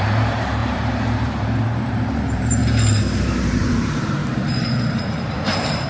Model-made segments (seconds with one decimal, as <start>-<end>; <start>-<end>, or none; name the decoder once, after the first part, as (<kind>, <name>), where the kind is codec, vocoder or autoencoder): 0.0-2.6 (vocoder, BigVGAN v2); 3.2-4.2; 4.9-5.9